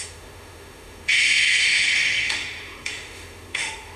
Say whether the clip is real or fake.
fake